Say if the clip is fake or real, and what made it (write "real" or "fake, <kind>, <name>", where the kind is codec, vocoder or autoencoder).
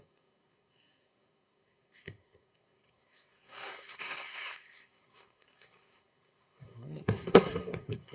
fake, codec, SNAC